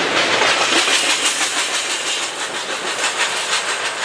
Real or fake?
real